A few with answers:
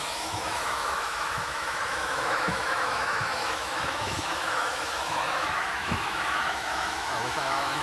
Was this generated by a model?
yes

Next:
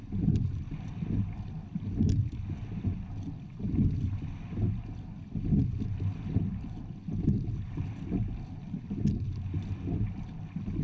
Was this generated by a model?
no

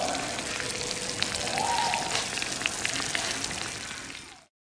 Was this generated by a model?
no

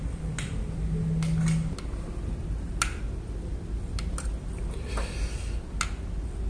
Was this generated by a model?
no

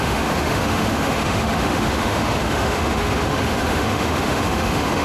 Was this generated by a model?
yes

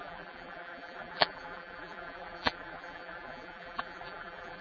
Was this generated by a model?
yes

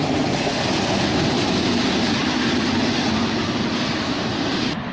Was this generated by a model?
no